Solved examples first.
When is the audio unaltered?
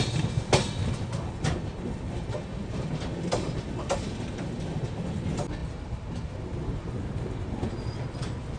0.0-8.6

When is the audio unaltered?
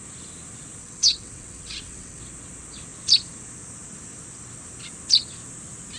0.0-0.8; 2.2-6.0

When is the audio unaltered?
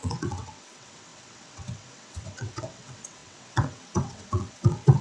none